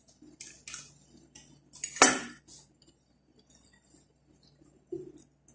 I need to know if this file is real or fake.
real